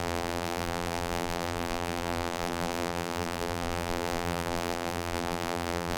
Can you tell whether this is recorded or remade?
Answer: remade